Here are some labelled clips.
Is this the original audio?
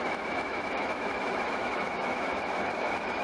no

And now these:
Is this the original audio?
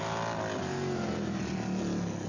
yes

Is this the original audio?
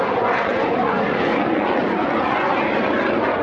no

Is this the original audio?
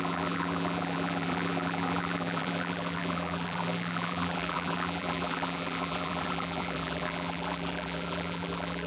no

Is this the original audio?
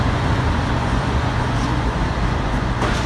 no